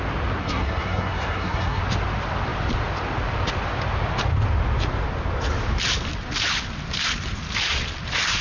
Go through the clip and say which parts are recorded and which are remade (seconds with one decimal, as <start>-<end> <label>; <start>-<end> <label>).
0.0-0.4 recorded; 0.4-1.8 remade; 1.8-8.4 recorded